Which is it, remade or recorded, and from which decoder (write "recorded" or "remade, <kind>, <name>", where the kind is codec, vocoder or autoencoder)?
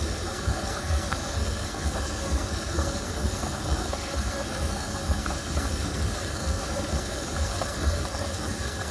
remade, codec, SNAC